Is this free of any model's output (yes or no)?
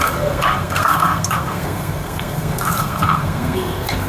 no